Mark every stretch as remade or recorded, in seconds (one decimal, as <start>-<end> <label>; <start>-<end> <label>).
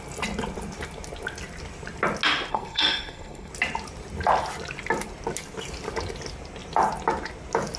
0.0-2.5 recorded; 2.5-3.5 remade; 3.5-7.8 recorded